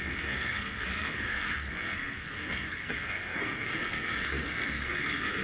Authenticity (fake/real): fake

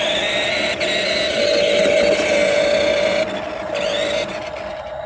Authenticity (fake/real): real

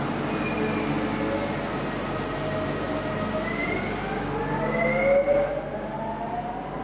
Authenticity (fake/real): real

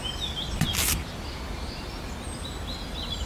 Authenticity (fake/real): real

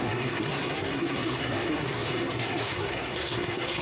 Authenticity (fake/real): fake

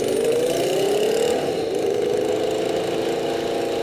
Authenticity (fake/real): real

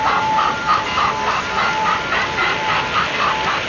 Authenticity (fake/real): real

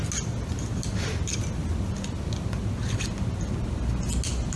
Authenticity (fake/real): real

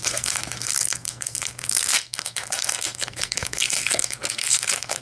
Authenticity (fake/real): fake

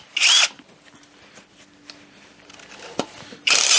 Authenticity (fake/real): real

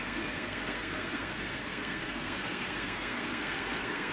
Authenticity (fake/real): fake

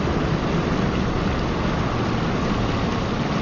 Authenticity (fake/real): real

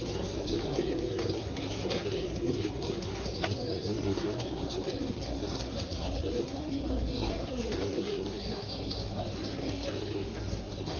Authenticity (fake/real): fake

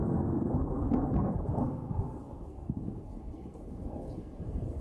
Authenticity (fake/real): fake